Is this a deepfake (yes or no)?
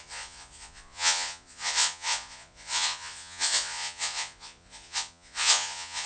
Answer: yes